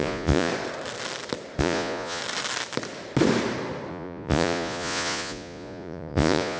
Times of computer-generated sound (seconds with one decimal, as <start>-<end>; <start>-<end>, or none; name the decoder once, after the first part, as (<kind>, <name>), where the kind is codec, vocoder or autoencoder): 0.0-0.5 (vocoder, Vocos); 1.6-2.2; 3.9-6.6